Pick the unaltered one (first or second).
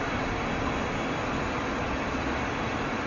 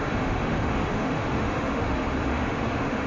first